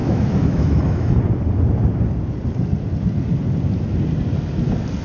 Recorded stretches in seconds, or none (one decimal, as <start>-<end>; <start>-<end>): 1.2-5.0